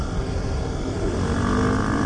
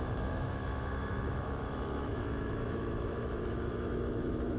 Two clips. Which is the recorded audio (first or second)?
first